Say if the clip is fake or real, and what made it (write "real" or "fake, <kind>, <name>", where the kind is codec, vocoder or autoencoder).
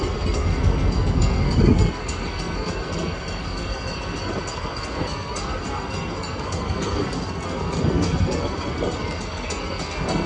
fake, codec, SNAC